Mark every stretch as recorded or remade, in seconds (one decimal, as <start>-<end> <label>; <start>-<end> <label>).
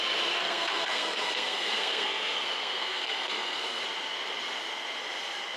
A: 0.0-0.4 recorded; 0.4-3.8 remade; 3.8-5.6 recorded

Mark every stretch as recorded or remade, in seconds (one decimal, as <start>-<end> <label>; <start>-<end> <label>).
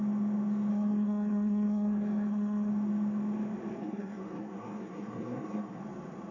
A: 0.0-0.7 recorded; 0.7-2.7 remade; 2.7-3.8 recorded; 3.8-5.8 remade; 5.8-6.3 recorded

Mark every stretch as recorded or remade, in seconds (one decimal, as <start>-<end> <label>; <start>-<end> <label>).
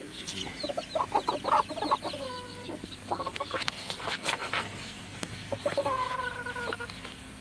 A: 0.0-0.4 remade; 0.4-2.2 recorded; 2.2-6.1 remade; 6.1-6.7 recorded; 6.7-7.4 remade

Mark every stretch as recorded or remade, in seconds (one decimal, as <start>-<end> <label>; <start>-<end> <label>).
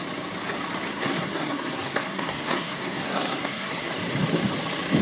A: 0.0-0.9 recorded; 0.9-3.9 remade; 3.9-5.0 recorded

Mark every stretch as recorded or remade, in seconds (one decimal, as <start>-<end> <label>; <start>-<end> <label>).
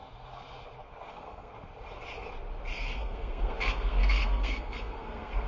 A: 0.0-1.1 recorded; 1.1-1.5 remade; 1.5-2.7 recorded; 2.7-5.5 remade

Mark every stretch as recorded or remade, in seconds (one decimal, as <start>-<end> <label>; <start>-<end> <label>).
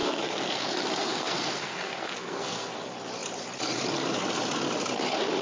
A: 0.0-0.6 remade; 0.6-1.0 recorded; 1.0-2.7 remade; 2.7-5.4 recorded